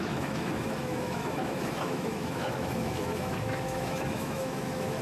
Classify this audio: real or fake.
fake